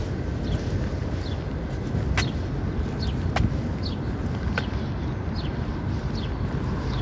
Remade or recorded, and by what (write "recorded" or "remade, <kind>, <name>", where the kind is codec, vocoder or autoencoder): recorded